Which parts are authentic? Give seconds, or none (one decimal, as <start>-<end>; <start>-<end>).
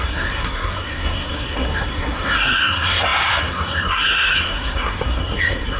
none